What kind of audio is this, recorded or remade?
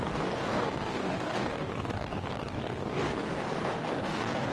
remade